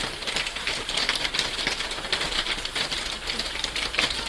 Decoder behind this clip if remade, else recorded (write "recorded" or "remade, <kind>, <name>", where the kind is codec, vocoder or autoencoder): remade, vocoder, BigVGAN v2